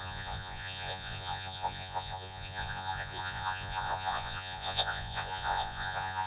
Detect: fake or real fake